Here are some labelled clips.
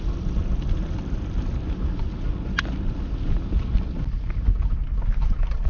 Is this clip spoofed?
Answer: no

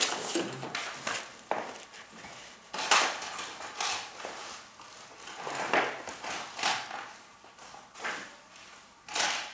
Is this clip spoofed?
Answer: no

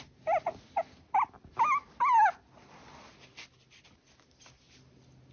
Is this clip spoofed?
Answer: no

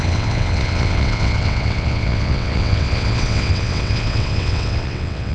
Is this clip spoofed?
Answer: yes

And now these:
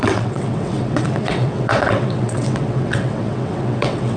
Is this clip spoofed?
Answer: yes